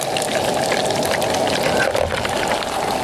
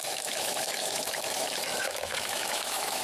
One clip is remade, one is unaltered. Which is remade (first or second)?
second